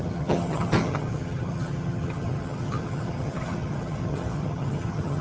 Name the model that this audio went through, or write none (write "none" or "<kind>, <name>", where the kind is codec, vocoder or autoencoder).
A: vocoder, HiFi-GAN